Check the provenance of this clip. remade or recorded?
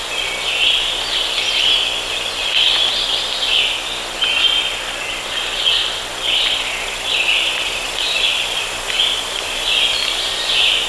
recorded